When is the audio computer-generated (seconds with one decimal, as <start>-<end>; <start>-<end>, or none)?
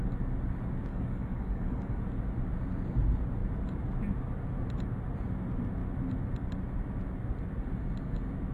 0.9-2.0